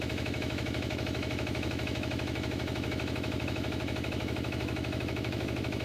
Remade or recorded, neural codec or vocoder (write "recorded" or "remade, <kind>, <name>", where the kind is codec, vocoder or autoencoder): remade, autoencoder, DAC-VAE